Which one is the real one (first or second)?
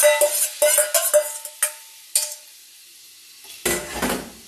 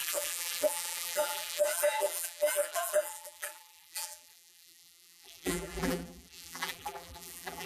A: first